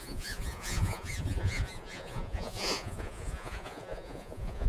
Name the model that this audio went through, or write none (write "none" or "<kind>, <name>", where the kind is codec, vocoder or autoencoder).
vocoder, Vocos